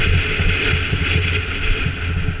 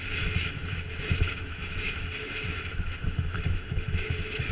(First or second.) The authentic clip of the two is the first